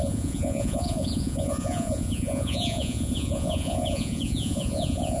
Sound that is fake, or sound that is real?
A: fake